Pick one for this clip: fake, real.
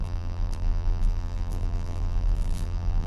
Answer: fake